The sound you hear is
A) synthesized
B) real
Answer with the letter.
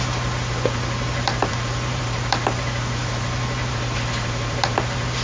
A